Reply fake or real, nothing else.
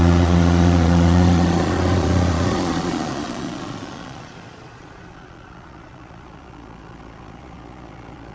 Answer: fake